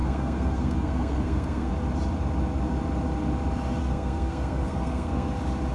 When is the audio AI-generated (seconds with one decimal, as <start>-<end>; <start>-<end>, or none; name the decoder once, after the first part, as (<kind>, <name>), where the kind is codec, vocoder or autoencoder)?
0.0-1.7 (codec, SNAC); 3.8-5.3